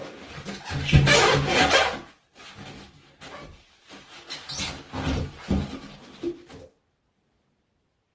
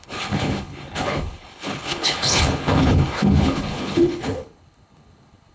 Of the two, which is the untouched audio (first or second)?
first